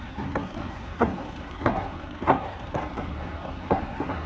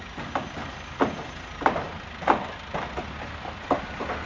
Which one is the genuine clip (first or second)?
second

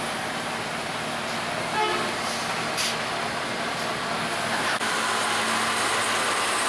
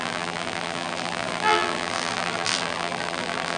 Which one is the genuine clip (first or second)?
first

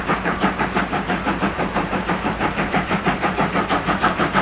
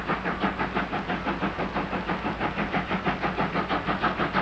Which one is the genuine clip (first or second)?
second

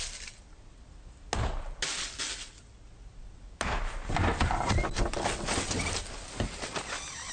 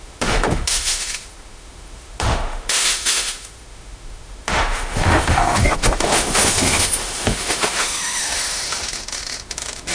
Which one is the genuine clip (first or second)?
first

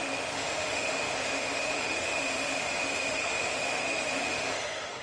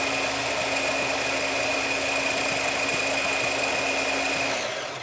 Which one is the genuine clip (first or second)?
second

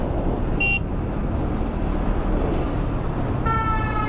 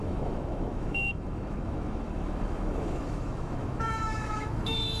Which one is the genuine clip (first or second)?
first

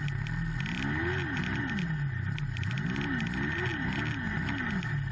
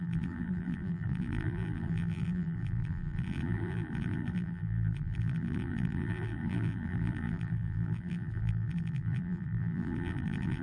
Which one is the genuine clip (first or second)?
first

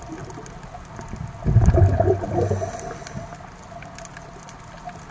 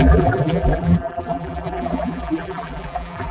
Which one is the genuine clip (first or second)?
first